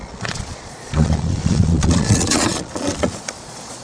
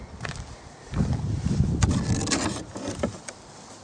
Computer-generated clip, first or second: first